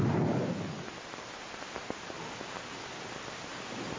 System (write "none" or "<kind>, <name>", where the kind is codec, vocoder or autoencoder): none